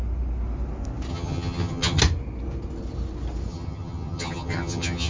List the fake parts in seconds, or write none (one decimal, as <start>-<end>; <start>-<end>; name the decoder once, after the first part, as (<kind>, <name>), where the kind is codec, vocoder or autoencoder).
1.1-2.0 (vocoder, HiFi-GAN); 3.5-5.1